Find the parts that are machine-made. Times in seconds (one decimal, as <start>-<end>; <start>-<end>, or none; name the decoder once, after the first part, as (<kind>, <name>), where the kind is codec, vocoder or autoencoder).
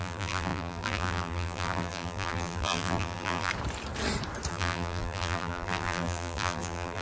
0.0-3.5 (vocoder, BigVGAN v2); 4.5-7.0